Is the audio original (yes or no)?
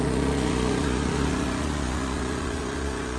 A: no